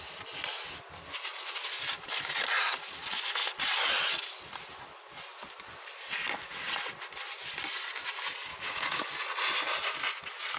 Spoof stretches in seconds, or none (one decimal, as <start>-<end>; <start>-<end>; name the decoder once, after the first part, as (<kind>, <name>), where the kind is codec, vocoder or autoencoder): 8.5-9.0 (autoencoder, DAC-VAE)